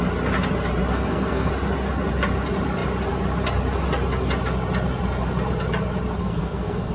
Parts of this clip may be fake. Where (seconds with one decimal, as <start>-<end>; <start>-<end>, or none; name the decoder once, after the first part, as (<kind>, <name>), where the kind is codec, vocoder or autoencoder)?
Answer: 0.9-1.5 (codec, SNAC); 6.2-6.9